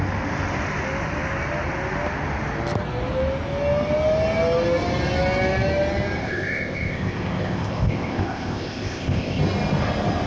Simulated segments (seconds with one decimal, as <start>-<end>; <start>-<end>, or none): 6.2-9.4